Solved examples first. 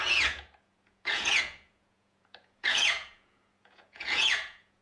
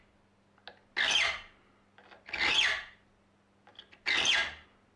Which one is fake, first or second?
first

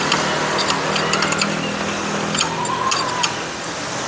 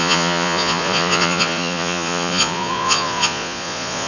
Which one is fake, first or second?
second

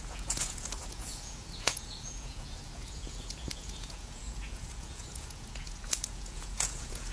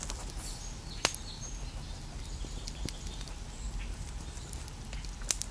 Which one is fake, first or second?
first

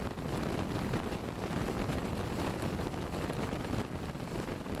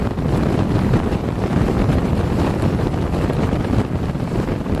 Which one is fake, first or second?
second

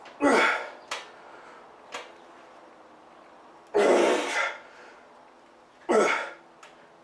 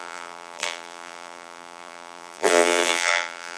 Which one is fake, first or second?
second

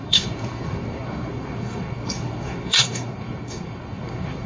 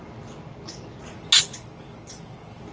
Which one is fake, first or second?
first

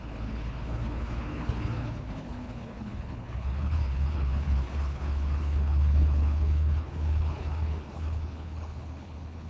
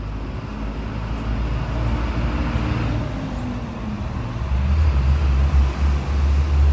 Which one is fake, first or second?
first